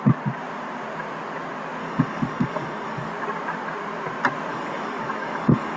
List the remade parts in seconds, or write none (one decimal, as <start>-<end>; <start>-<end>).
1.8-3.1; 4.5-5.8